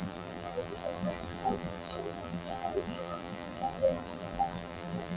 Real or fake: fake